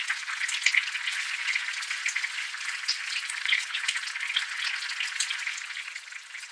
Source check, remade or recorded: remade